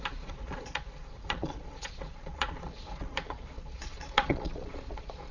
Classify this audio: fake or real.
fake